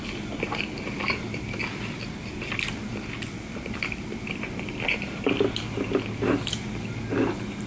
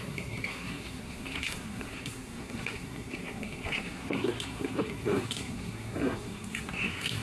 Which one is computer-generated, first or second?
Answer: second